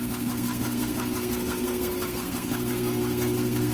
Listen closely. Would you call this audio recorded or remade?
remade